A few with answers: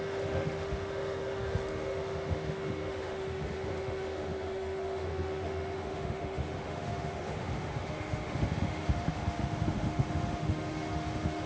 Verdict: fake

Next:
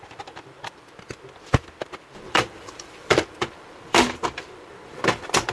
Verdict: fake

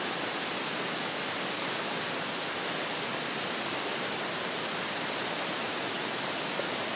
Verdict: real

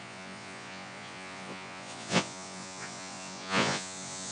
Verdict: fake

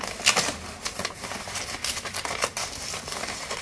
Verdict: real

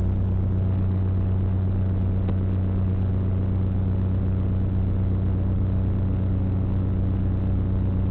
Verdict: real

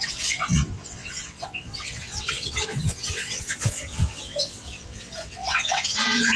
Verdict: fake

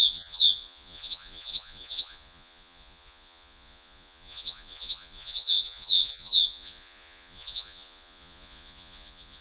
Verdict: fake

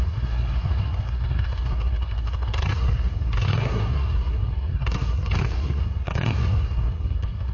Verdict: fake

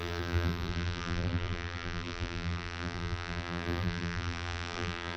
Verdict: fake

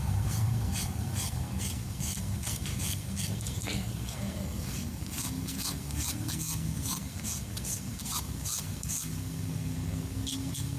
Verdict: fake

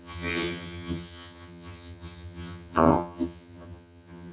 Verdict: fake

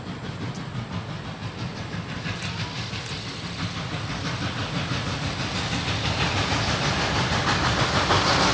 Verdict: real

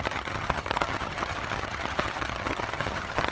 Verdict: fake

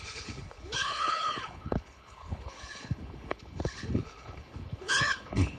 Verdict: fake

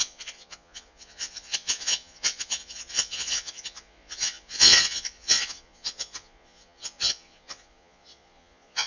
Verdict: fake